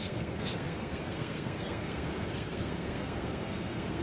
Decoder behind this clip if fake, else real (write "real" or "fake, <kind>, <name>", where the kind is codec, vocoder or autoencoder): fake, codec, SNAC